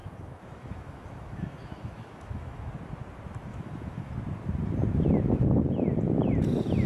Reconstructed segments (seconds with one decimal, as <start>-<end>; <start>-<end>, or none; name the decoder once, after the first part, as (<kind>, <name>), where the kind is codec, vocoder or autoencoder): 0.0-2.7 (autoencoder, DAC-VAE); 3.5-4.1